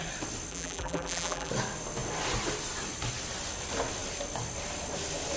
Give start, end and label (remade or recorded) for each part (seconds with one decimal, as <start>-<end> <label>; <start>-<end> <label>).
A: 0.0-0.5 recorded; 0.5-1.5 remade; 1.5-5.4 recorded